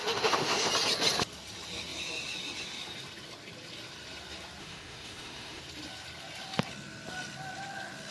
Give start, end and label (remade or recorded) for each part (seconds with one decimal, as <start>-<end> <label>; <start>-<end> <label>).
0.0-0.7 remade; 0.7-4.6 recorded; 4.6-5.6 remade; 5.6-8.1 recorded